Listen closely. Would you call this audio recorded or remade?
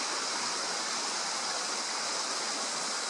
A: recorded